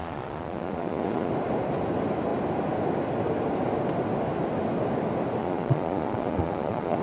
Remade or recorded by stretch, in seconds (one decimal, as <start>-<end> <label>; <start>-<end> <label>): 0.0-1.3 remade; 1.3-5.4 recorded; 5.4-7.0 remade